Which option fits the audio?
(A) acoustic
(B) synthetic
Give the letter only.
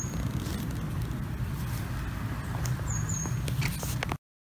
A